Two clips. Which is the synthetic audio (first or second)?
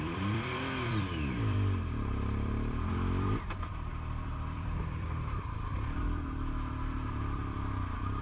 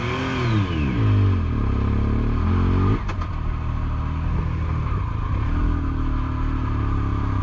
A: first